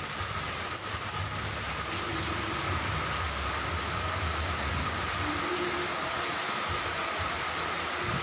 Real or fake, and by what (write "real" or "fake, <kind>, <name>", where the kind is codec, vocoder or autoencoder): real